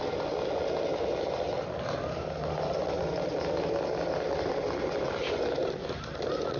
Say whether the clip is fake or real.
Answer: real